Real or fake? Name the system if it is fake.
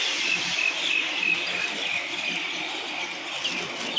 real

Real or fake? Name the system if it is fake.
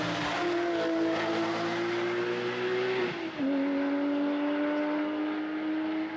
real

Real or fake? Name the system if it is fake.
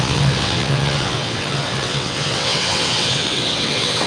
fake, vocoder, WaveNeXt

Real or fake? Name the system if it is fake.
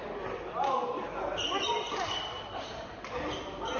real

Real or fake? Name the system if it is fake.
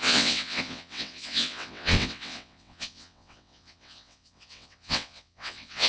fake, vocoder, WaveNeXt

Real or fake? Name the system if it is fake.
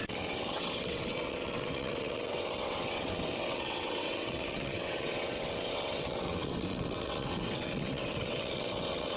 fake, vocoder, WaveNeXt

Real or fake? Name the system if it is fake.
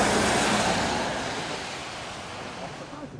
real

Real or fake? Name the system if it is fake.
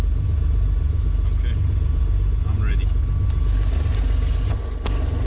real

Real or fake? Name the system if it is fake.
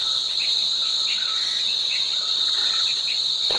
fake, vocoder, WaveNeXt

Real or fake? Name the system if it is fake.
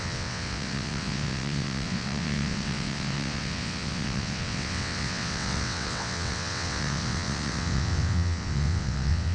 fake, vocoder, WaveNeXt